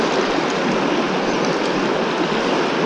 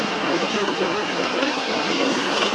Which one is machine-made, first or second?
second